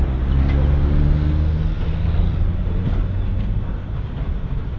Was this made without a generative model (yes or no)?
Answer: yes